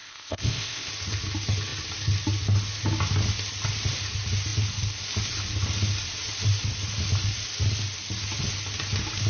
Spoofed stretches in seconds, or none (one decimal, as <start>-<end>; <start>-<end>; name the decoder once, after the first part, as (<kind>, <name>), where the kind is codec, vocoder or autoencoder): 0.0-0.9 (codec, ZipCodec)